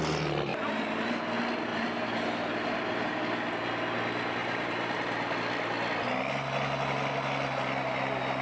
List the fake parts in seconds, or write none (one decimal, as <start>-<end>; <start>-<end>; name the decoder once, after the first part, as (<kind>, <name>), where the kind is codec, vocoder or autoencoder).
0.5-1.2 (vocoder, BigVGAN v2); 1.7-3.2; 4.4-5.4